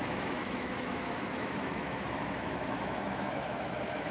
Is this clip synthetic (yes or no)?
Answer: yes